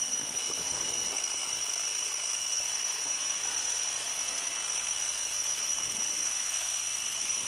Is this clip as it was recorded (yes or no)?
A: no